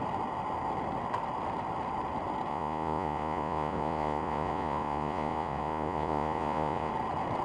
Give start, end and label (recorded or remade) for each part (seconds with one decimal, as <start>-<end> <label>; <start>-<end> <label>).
0.0-2.5 recorded; 2.5-6.9 remade; 6.9-7.4 recorded